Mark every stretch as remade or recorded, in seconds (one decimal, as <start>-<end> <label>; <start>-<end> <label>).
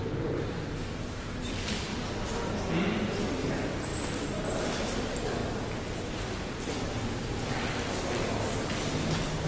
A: 0.0-9.5 recorded